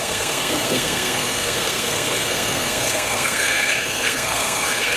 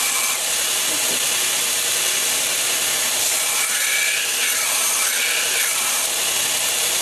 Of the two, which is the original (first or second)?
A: second